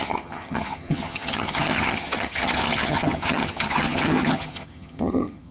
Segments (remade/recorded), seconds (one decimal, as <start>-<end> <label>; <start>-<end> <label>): 0.0-5.5 remade